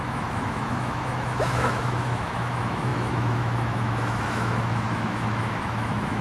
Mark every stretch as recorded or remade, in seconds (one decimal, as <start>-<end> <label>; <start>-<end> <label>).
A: 0.0-6.2 remade